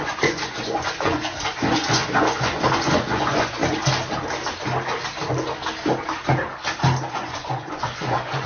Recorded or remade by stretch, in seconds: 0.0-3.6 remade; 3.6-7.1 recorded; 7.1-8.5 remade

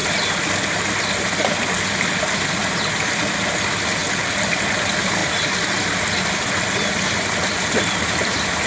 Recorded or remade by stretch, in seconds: 0.0-0.8 remade; 0.8-4.0 recorded; 4.0-4.6 remade; 4.6-5.2 recorded; 5.2-6.9 remade; 6.9-8.7 recorded

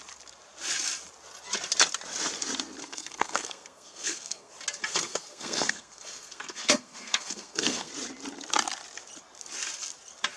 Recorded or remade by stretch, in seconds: 0.0-2.8 recorded; 2.8-4.5 remade; 4.5-4.9 recorded; 4.9-7.9 remade; 7.9-10.4 recorded

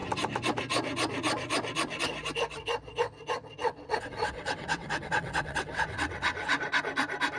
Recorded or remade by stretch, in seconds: 0.0-3.6 recorded; 3.6-6.8 remade; 6.8-7.4 recorded